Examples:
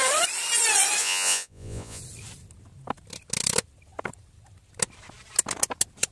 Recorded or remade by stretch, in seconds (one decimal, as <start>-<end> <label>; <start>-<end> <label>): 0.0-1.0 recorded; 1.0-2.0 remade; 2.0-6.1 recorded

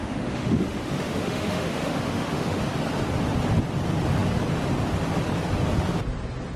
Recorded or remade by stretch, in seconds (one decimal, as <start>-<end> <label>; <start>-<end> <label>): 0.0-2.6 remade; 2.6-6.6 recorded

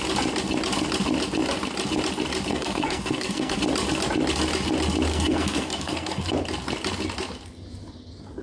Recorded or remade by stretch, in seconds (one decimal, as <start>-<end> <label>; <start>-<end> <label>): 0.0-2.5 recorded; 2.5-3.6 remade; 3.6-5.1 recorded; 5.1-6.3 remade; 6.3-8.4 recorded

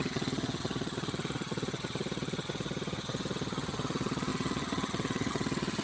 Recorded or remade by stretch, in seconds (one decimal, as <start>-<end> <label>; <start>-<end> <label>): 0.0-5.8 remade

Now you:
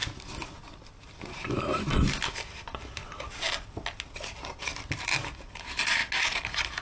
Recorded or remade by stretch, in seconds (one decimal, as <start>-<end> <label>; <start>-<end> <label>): 0.0-6.8 recorded

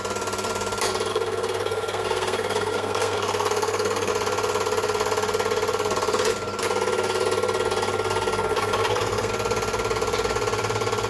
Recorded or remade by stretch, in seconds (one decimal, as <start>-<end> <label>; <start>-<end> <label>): 0.0-1.1 recorded; 1.1-4.1 remade; 4.1-8.5 recorded; 8.5-9.3 remade; 9.3-11.1 recorded